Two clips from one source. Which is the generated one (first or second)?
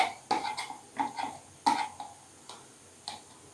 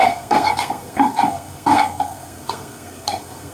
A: second